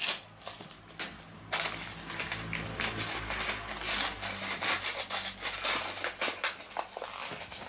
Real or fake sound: real